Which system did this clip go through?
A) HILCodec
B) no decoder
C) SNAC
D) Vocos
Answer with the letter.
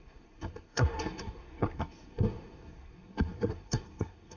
C